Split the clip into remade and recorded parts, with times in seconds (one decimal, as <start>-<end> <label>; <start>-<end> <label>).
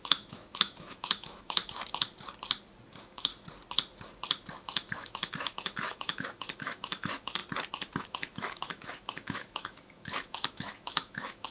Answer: 0.0-1.6 remade; 1.6-2.9 recorded; 2.9-3.3 remade; 3.3-4.6 recorded; 4.6-7.4 remade; 7.4-8.0 recorded; 8.0-11.5 remade